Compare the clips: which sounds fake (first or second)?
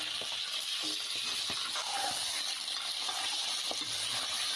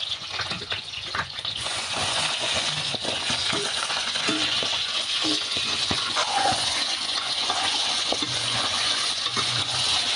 second